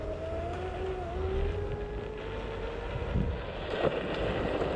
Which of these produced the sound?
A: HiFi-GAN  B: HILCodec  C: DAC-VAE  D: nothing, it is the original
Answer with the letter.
D